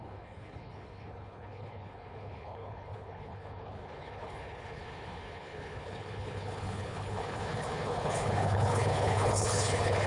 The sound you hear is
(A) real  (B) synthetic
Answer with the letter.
B